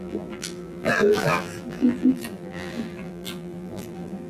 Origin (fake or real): fake